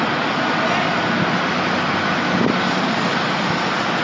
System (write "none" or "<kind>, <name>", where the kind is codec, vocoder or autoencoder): none